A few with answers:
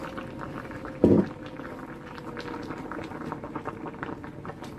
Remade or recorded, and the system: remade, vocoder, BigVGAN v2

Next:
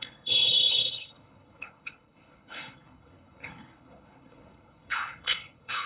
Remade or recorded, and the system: remade, codec, HILCodec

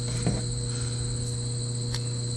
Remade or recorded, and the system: recorded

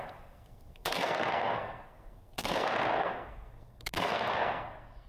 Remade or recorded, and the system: remade, codec, SNAC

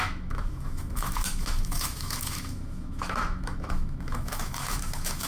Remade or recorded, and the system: remade, autoencoder, DAC-VAE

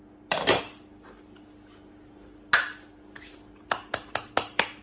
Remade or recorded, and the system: recorded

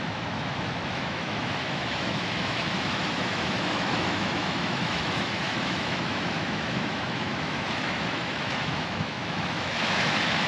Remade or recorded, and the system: remade, autoencoder, DAC-VAE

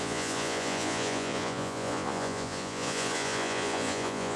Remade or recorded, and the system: remade, vocoder, Vocos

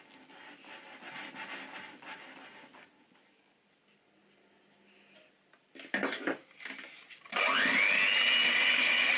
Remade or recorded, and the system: recorded